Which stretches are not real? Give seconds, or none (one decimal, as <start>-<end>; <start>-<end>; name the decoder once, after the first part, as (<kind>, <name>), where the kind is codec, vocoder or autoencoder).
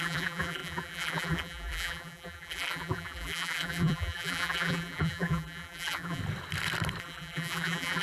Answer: 0.0-6.2 (vocoder, BigVGAN v2); 7.0-8.0